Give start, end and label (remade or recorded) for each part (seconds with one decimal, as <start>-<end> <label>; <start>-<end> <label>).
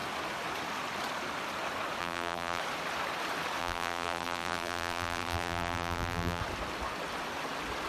0.0-2.0 recorded; 2.0-2.6 remade; 2.6-3.6 recorded; 3.6-6.4 remade; 6.4-7.9 recorded